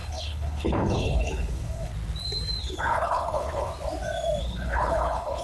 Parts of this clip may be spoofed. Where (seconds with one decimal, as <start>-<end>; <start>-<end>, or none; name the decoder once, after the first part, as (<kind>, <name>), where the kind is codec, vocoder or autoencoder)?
0.0-1.9 (codec, HILCodec); 2.6-3.7; 4.4-5.4